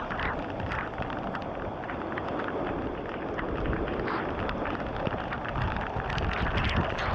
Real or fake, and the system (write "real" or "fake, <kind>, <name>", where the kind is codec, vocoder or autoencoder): real